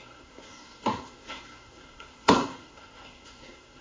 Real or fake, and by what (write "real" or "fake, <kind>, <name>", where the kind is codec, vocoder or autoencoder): fake, codec, SNAC